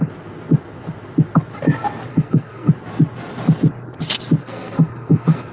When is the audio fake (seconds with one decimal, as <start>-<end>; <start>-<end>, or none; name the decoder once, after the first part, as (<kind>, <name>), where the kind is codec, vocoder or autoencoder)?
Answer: 2.1-2.7 (codec, SNAC); 4.4-5.5